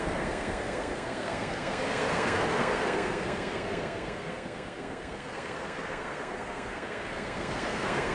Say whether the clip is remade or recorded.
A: remade